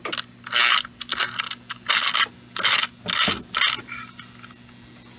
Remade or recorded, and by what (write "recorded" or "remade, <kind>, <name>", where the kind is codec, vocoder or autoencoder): recorded